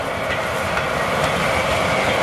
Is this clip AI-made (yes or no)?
no